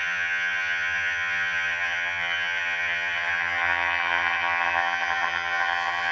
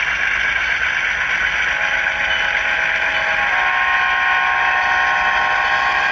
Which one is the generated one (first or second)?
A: first